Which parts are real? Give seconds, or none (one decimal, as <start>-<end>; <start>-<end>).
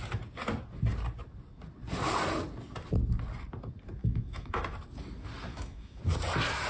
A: 0.0-4.0; 4.6-5.5; 6.0-6.7